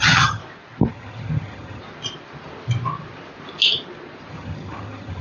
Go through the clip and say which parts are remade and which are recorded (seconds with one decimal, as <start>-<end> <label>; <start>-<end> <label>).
0.0-0.4 remade; 0.4-0.9 recorded; 0.9-1.8 remade; 1.8-4.3 recorded; 4.3-5.2 remade